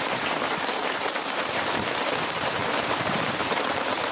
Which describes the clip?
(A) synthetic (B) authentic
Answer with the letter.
A